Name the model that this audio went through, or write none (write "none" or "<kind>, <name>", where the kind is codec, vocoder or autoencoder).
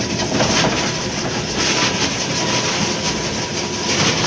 none